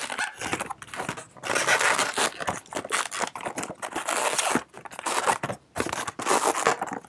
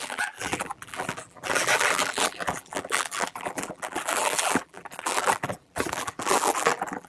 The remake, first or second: second